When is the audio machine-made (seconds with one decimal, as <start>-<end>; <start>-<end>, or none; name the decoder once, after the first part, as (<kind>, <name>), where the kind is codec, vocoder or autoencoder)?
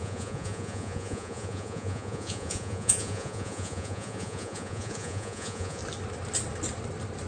0.0-5.8 (vocoder, Vocos)